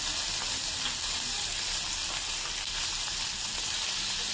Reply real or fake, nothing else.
real